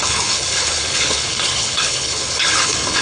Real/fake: fake